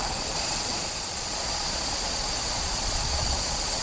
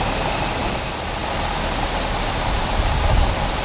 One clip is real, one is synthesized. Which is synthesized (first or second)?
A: first